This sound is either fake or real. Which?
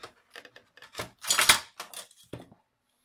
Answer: real